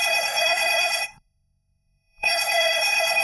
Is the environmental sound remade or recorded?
remade